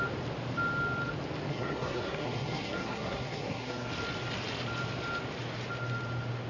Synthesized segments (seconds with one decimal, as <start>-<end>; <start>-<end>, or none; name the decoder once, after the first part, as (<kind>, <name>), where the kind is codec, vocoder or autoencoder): 1.5-3.9 (codec, SNAC)